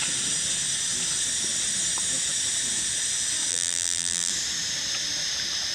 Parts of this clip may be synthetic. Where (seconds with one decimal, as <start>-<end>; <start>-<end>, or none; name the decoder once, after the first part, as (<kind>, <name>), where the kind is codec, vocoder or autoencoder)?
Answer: 3.5-4.3 (vocoder, BigVGAN v2)